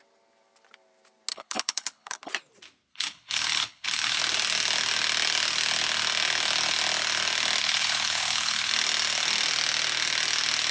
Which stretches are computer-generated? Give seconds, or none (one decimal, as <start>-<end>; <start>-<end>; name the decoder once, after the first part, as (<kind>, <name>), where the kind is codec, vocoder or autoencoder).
1.3-2.3 (codec, HILCodec); 2.9-4.2; 7.6-8.7